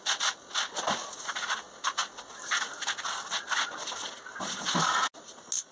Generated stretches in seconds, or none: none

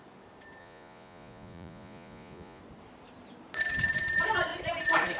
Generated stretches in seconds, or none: 0.6-2.6 (vocoder, Vocos)

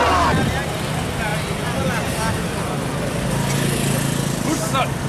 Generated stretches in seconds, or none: none

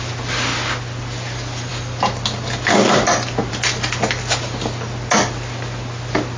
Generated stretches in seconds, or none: none

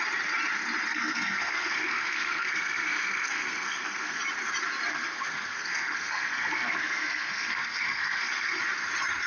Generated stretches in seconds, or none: 0.9-4.2 (codec, SNAC); 4.9-8.6

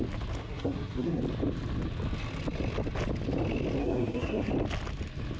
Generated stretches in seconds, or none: 0.4-1.2 (codec, SNAC); 3.8-4.5

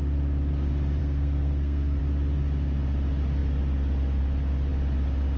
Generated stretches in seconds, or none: 1.0-2.0 (codec, SNAC)